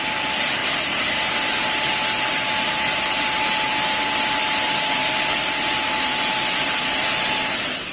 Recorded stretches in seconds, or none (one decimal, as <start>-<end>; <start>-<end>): 0.0-7.9

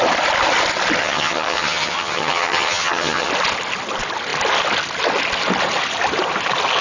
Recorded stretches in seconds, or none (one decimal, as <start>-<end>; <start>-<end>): 0.0-1.0; 3.3-6.8

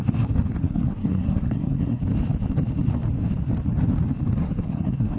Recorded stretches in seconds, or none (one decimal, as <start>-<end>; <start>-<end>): 0.0-0.6; 2.0-4.4

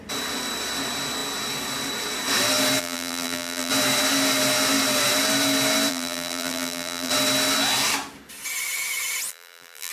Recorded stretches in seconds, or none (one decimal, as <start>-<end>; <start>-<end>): 0.0-2.8; 3.7-5.9; 7.1-9.3

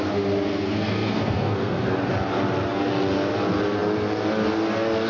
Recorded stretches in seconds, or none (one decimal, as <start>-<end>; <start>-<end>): 0.0-0.5; 2.1-5.1

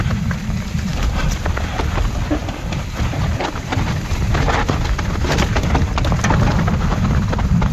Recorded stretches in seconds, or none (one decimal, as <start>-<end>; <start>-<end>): 0.0-0.9; 1.7-7.7

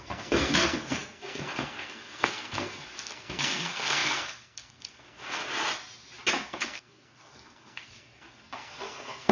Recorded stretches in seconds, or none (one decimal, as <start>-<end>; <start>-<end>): 5.4-6.3